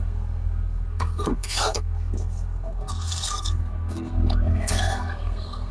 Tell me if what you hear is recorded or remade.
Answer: remade